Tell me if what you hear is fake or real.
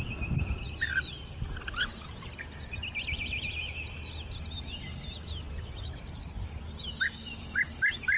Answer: real